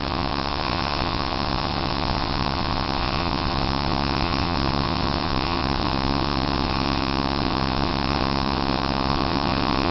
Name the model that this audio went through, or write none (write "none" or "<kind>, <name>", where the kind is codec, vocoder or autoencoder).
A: vocoder, WaveNeXt